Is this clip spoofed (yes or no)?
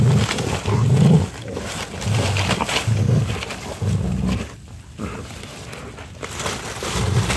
no